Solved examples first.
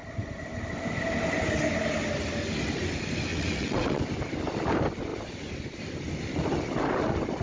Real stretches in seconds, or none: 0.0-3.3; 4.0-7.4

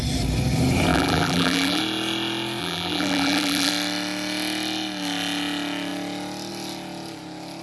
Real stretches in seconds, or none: 0.0-0.9; 1.8-2.6; 3.7-7.6

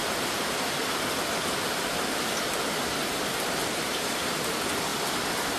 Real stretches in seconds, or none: 2.9-3.9

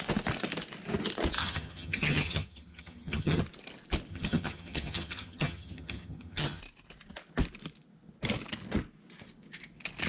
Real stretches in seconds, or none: 0.0-1.4; 3.4-4.1; 6.6-10.1

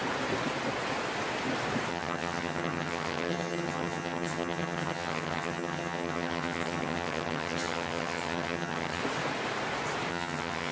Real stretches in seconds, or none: 0.0-1.9; 9.0-10.1

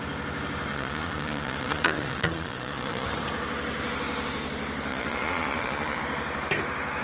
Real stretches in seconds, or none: 0.0-0.7; 3.1-4.9; 6.0-7.0

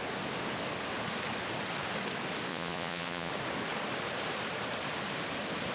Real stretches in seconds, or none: 0.0-2.5; 3.3-5.7